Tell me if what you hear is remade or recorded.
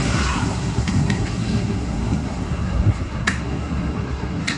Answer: remade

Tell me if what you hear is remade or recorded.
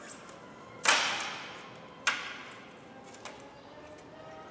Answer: recorded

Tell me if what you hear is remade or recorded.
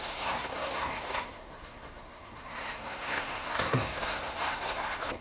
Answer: remade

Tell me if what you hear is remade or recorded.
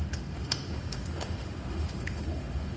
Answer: remade